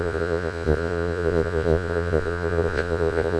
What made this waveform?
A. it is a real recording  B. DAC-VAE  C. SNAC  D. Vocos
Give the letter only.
D